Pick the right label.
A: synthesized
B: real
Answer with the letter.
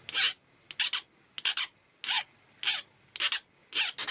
B